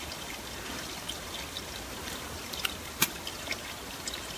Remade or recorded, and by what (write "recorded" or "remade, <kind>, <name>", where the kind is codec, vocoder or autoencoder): recorded